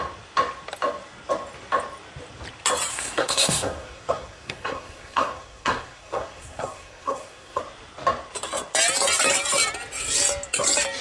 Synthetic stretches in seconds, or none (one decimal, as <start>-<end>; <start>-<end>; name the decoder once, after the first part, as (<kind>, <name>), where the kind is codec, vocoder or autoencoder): 2.9-7.6 (codec, SNAC)